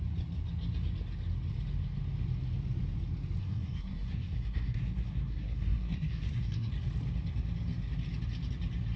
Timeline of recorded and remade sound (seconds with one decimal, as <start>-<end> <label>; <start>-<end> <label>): 0.0-3.4 recorded; 3.4-6.7 remade; 6.7-9.0 recorded